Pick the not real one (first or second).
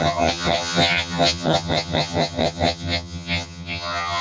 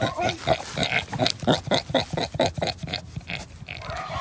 first